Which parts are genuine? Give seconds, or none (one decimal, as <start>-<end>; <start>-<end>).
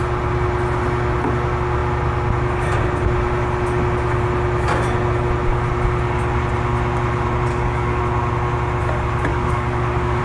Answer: 0.0-7.5; 8.0-9.3